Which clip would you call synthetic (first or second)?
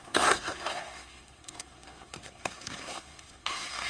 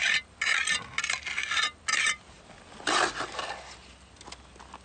first